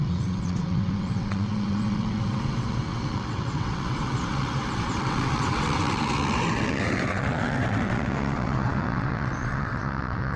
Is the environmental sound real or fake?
fake